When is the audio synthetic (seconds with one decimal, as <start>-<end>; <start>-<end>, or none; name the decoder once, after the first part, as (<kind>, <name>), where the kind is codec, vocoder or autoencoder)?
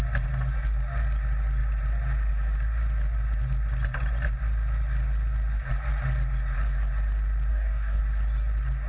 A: 7.5-8.0 (codec, DAC)